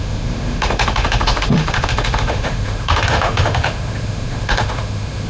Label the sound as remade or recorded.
remade